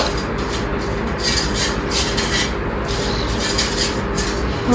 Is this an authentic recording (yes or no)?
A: yes